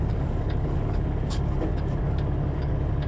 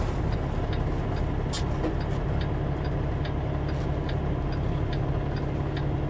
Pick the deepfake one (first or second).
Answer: first